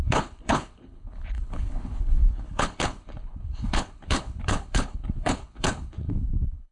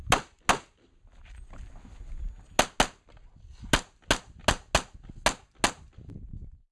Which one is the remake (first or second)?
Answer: first